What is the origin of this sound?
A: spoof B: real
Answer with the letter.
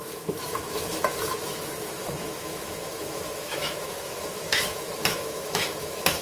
A